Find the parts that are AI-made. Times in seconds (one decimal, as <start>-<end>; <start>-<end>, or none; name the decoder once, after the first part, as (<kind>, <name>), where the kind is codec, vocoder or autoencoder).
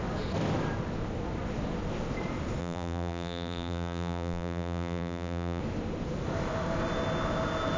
2.6-5.6 (vocoder, BigVGAN v2)